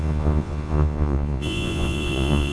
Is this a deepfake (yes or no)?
yes